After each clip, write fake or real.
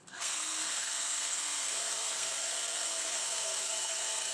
fake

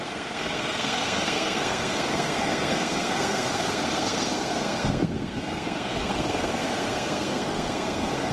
fake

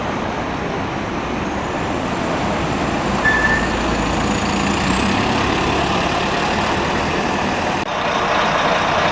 real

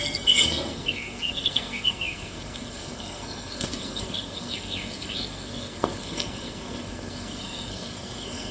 fake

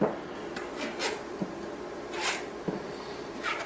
real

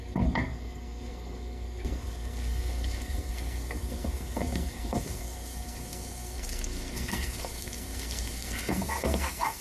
fake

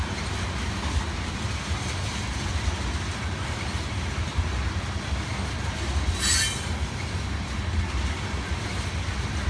real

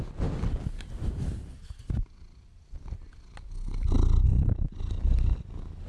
real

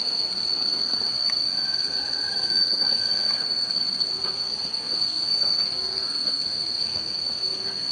fake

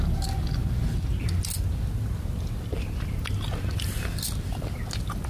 real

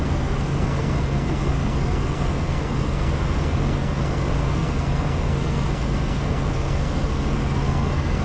fake